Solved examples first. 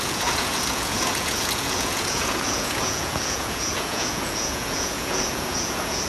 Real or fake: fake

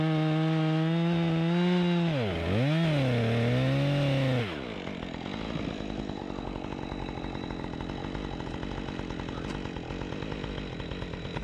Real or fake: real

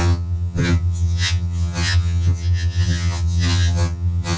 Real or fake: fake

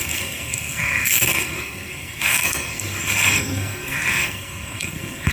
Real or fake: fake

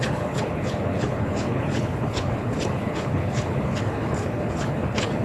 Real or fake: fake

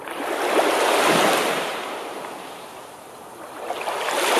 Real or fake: real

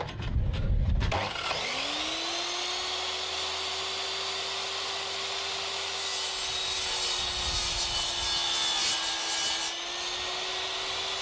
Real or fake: real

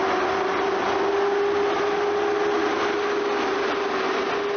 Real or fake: real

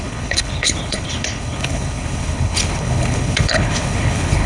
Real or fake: fake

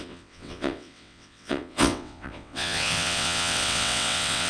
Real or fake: fake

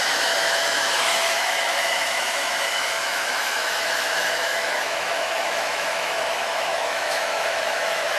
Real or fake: fake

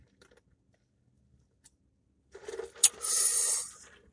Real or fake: fake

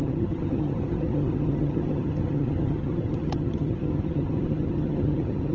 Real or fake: fake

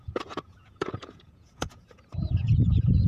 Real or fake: fake